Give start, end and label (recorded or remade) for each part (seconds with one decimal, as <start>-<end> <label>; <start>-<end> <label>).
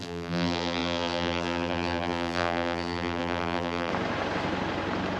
0.0-3.9 remade; 3.9-5.2 recorded